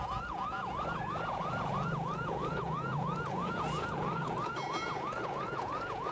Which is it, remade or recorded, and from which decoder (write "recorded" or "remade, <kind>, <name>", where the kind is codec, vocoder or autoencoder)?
remade, vocoder, Vocos